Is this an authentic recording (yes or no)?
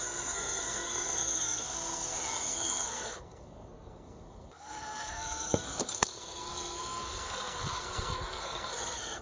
no